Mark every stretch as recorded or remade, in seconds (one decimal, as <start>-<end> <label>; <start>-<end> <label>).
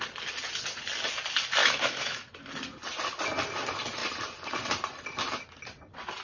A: 0.0-1.6 recorded; 1.6-2.4 remade; 2.4-6.2 recorded